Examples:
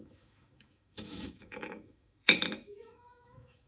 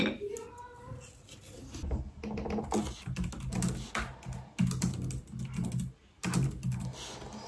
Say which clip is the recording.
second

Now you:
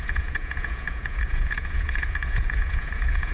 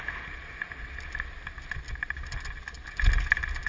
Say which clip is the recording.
second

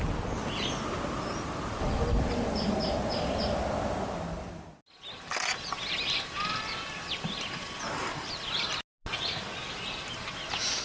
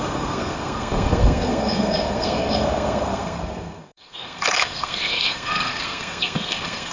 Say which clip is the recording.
first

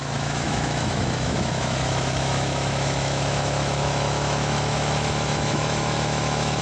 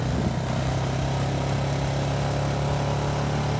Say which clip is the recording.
second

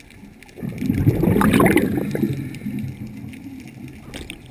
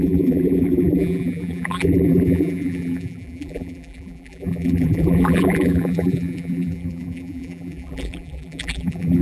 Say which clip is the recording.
first